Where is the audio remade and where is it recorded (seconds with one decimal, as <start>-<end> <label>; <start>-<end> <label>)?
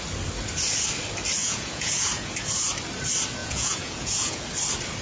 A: 0.0-1.4 recorded; 1.4-2.3 remade; 2.3-3.4 recorded; 3.4-4.4 remade; 4.4-5.0 recorded